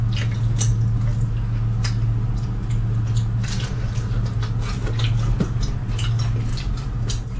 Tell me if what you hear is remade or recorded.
recorded